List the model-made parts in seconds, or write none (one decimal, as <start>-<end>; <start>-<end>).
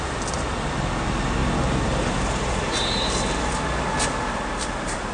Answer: none